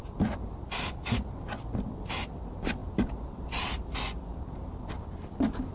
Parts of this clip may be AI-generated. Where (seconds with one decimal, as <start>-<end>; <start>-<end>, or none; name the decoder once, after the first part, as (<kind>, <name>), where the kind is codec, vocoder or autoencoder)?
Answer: none